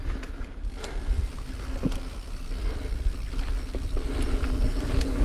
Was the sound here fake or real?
real